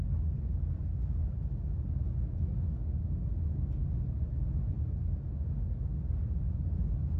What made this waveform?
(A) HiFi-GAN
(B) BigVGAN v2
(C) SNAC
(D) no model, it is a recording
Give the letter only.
D